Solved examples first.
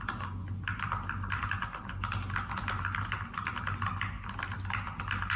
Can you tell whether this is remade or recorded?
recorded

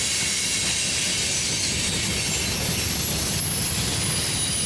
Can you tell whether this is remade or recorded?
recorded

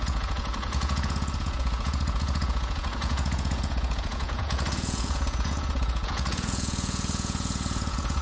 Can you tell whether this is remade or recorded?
remade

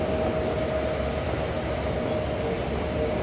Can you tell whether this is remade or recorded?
recorded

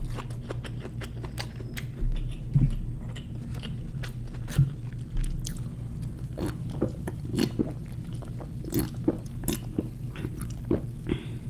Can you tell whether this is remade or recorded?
recorded